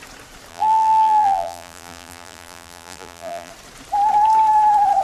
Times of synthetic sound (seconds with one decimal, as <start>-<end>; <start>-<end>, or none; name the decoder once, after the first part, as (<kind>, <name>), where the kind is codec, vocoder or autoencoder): 0.5-3.5 (vocoder, BigVGAN v2)

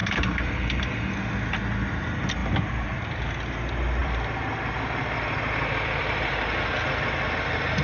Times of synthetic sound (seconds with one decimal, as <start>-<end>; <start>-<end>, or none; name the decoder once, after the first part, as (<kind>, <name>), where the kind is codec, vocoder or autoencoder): 0.0-0.9 (vocoder, BigVGAN v2); 2.4-3.2; 4.0-5.4

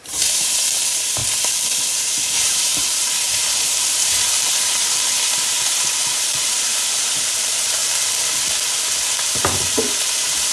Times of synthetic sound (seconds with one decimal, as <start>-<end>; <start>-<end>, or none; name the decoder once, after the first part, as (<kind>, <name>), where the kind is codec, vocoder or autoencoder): 0.0-1.2 (vocoder, BigVGAN v2); 2.0-7.8; 9.3-10.5